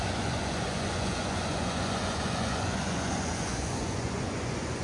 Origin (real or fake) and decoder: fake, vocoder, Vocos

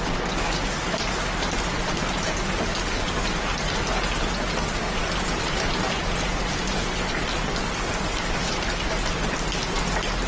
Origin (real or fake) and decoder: real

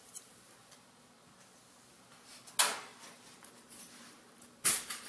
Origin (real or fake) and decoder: real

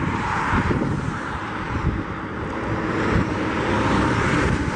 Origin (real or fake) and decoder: fake, vocoder, BigVGAN v2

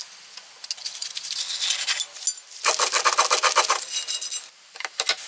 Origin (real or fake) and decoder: real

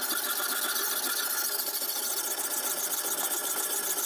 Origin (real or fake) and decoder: real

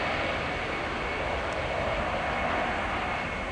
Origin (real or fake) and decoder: real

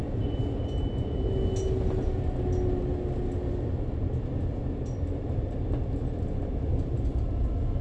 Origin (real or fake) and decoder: real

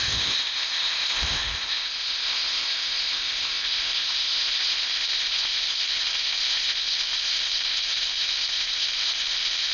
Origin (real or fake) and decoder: fake, codec, ZipCodec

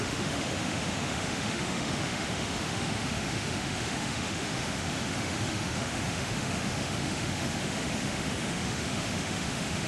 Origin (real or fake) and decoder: fake, autoencoder, DAC-VAE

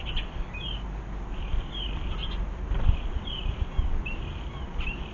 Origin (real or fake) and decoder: real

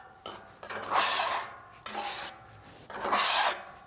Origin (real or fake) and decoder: real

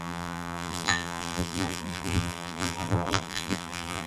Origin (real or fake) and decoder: fake, vocoder, BigVGAN v2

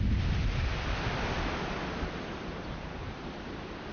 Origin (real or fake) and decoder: real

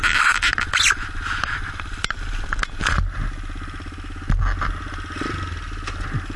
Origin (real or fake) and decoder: real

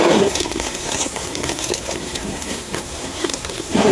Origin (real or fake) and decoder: fake, codec, SNAC